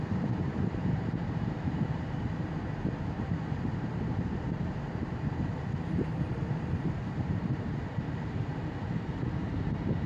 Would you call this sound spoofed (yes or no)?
yes